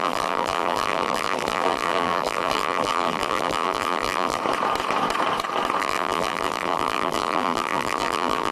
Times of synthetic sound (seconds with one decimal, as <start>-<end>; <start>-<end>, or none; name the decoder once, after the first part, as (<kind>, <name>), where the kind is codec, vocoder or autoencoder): 0.0-4.4 (vocoder, BigVGAN v2); 5.8-8.5